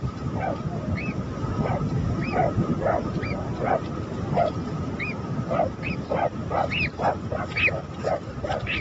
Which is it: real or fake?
real